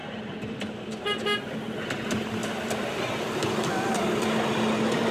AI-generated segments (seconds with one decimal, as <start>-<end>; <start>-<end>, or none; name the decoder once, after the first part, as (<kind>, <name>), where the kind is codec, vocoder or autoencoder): 2.4-4.5 (vocoder, BigVGAN v2)